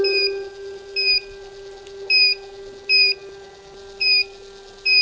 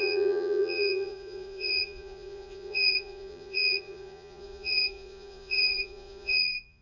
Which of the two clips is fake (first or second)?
second